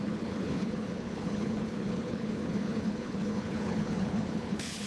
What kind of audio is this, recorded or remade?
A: remade